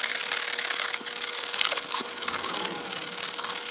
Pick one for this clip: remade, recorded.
remade